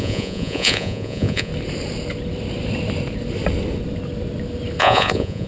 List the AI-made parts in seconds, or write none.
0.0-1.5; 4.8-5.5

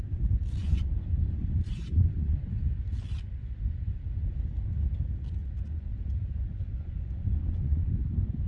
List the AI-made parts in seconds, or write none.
0.6-2.5; 5.4-5.9; 6.5-7.9

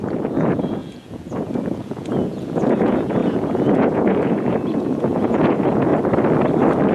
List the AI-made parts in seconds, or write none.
0.0-5.9

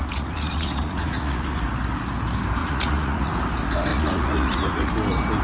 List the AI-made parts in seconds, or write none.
0.0-1.6; 2.6-3.3; 3.9-4.9

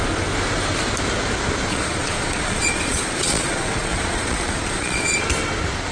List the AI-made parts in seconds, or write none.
1.7-5.2

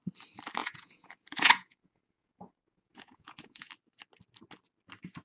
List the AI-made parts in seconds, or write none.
0.6-3.7

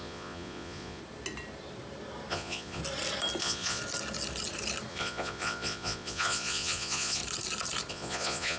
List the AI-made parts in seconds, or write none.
0.0-1.0; 2.3-2.8; 3.4-3.8; 4.9-7.2; 7.9-8.6

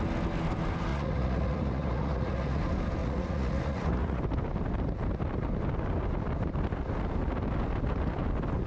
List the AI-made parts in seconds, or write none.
0.9-2.6; 3.0-4.2